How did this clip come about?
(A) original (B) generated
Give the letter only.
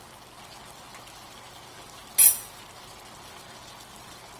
A